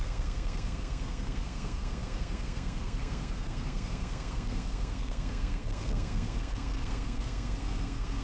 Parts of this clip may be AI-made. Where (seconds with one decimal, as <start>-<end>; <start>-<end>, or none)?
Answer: 0.0-8.2